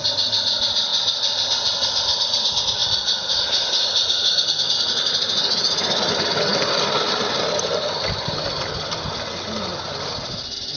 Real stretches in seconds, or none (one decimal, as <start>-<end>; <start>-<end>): 0.0-10.8